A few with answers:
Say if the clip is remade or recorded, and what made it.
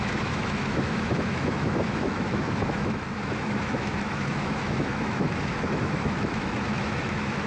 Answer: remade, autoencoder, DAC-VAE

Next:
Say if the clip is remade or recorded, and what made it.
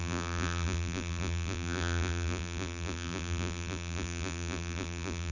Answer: remade, vocoder, BigVGAN v2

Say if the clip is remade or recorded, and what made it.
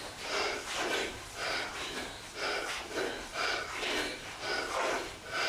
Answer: recorded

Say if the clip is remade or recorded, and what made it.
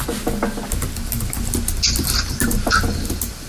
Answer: recorded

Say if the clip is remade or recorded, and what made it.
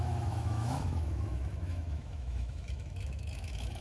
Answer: remade, autoencoder, DAC-VAE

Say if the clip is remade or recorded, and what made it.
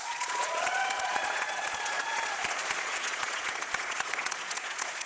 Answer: remade, vocoder, Vocos